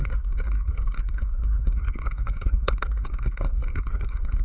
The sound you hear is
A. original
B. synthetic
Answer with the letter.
B